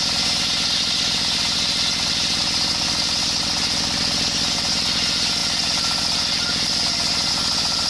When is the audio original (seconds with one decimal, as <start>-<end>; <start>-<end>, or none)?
0.0-7.9